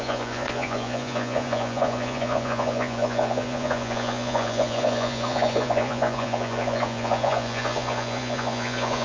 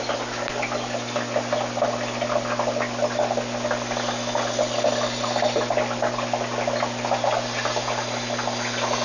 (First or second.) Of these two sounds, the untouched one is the second